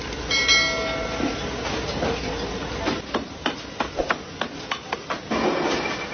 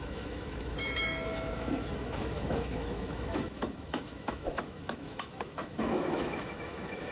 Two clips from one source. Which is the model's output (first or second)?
second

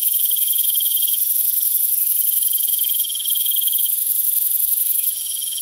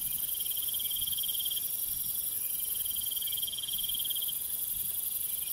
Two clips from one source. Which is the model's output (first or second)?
first